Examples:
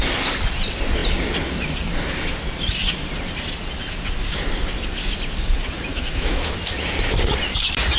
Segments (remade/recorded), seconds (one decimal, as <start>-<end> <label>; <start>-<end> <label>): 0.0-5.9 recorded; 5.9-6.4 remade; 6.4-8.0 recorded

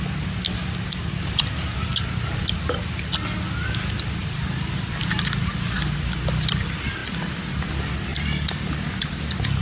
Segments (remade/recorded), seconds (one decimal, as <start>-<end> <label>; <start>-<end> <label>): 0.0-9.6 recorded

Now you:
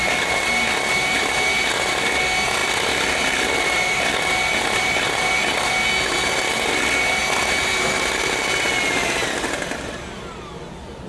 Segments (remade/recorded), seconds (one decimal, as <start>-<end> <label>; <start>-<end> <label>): 0.0-11.1 recorded

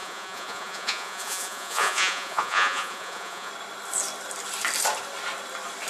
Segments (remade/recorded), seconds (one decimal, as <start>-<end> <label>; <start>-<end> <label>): 0.0-3.5 remade; 3.5-5.9 recorded

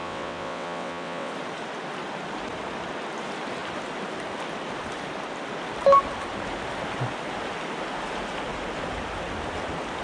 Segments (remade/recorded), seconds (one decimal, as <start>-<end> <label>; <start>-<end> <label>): 0.0-1.3 remade; 1.3-10.0 recorded

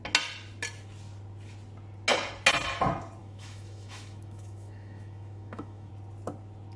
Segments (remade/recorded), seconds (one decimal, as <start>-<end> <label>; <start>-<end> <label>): 0.0-3.2 recorded; 3.2-5.9 remade; 5.9-6.8 recorded

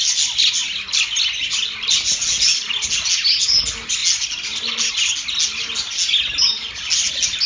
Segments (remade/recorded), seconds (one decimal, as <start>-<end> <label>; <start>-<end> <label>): 0.0-7.5 recorded

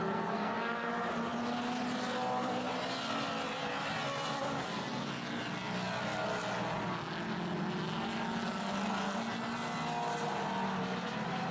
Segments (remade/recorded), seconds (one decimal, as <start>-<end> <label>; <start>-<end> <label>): 0.0-0.9 remade; 0.9-11.5 recorded